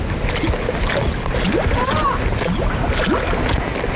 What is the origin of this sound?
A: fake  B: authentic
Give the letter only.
B